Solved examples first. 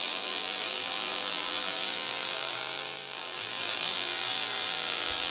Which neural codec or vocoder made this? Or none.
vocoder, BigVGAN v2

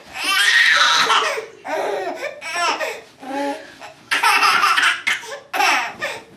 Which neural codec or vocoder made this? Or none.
none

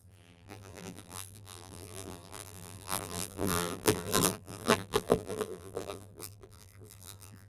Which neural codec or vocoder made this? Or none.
vocoder, BigVGAN v2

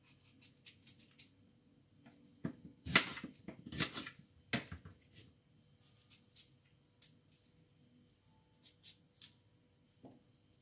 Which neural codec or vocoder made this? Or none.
none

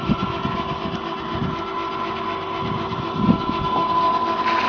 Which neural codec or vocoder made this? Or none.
none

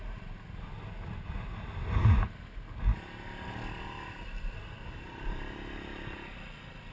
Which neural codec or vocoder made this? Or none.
none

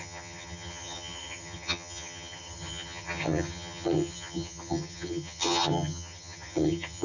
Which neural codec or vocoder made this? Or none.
vocoder, HiFi-GAN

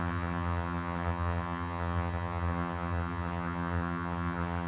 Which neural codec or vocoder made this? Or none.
vocoder, HiFi-GAN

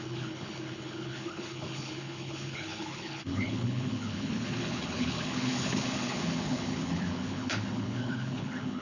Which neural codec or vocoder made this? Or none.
codec, HILCodec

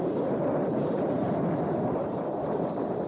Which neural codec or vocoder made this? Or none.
none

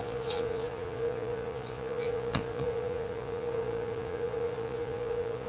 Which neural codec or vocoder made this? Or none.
vocoder, Vocos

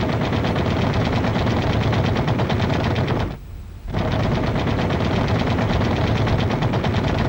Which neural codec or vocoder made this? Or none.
none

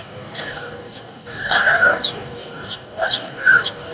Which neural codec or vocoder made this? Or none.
codec, DAC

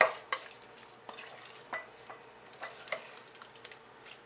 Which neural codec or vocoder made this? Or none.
none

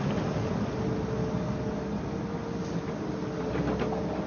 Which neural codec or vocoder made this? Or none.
none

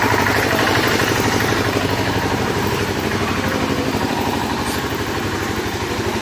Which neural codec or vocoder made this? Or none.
vocoder, BigVGAN v2